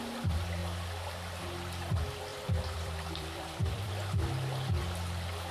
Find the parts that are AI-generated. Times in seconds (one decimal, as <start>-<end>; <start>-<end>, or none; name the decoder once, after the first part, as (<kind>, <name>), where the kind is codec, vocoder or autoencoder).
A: 2.3-3.9 (vocoder, BigVGAN v2)